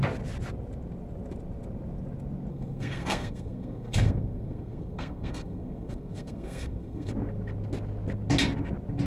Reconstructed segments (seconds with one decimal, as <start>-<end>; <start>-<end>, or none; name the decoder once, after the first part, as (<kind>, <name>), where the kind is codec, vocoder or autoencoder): 2.5-7.1 (codec, SNAC)